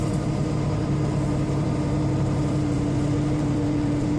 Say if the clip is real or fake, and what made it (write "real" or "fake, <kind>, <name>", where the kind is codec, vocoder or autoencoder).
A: fake, vocoder, BigVGAN v2